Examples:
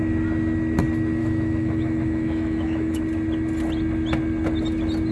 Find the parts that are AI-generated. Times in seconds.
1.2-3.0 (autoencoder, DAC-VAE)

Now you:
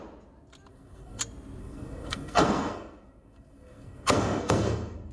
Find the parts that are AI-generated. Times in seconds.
0.7-1.2 (codec, SNAC); 1.6-5.1

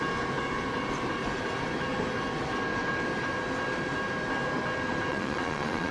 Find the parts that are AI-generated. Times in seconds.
5.1-5.9 (vocoder, Vocos)